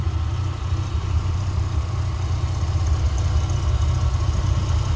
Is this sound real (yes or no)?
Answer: yes